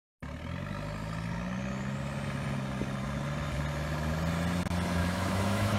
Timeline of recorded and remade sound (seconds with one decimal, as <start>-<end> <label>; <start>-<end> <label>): 0.0-5.0 recorded; 5.0-5.8 remade